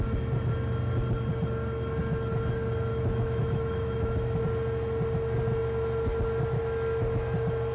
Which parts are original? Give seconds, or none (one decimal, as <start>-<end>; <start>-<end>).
0.0-2.9; 4.4-7.7